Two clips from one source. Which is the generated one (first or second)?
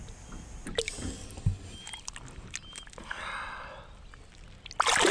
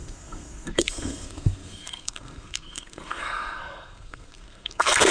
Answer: second